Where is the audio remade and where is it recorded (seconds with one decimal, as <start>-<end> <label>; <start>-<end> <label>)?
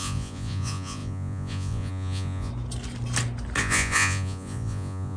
0.0-2.5 remade; 2.5-3.6 recorded; 3.6-5.2 remade